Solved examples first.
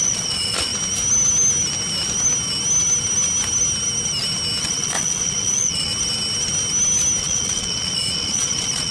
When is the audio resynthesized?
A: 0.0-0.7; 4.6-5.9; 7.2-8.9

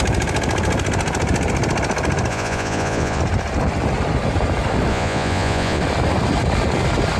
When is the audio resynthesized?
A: 2.3-3.2; 4.9-5.8

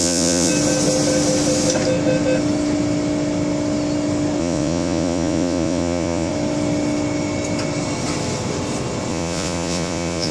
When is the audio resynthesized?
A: 0.0-0.5; 4.4-6.3; 9.1-10.3

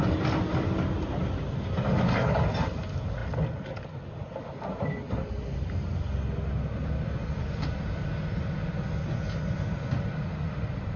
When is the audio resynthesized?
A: none